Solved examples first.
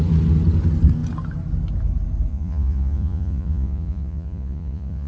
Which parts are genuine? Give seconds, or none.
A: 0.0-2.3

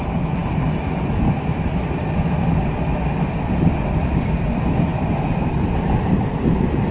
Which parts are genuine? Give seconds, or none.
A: 0.0-6.9